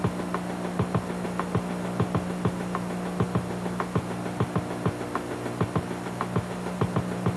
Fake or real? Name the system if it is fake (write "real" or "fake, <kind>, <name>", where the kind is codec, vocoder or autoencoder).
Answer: real